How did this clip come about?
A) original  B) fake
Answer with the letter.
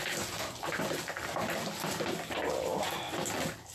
A